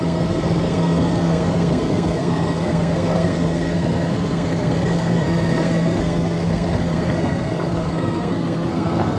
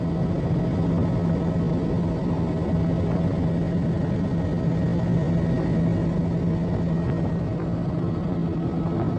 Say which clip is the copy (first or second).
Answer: first